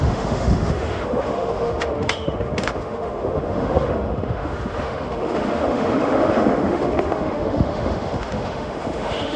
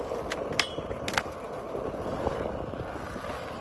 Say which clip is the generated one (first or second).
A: first